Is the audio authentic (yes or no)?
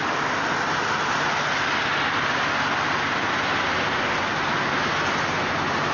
yes